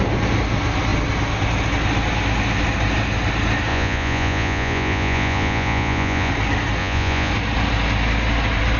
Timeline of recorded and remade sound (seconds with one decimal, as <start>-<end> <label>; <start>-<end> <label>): 0.0-3.7 recorded; 3.7-6.3 remade; 6.3-6.8 recorded; 6.8-7.3 remade; 7.3-8.8 recorded